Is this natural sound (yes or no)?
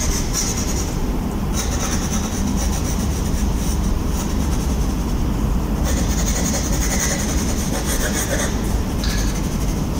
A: yes